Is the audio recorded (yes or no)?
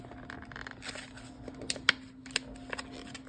yes